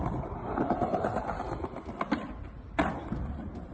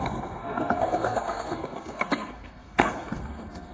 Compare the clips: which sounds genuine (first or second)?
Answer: first